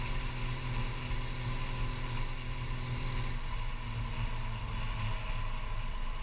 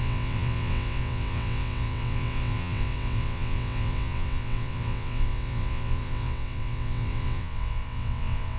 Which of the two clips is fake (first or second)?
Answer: second